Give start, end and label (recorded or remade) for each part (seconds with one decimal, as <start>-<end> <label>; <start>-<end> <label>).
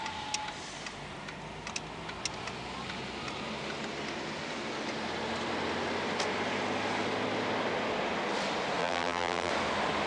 0.0-8.8 recorded; 8.8-9.5 remade; 9.5-10.1 recorded